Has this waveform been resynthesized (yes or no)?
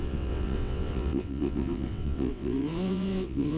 yes